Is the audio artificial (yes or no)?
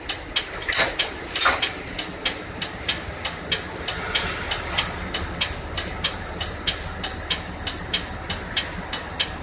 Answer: no